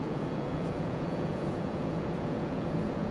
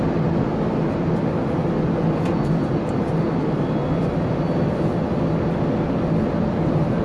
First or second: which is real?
second